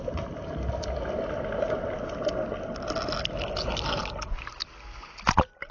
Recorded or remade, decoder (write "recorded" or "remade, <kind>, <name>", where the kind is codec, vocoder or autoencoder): recorded